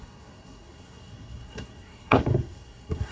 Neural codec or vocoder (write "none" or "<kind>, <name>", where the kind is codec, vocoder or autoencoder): codec, SNAC